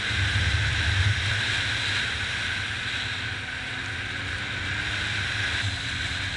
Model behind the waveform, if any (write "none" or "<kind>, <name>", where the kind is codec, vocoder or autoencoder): none